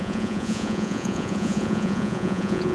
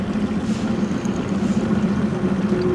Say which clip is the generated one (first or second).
first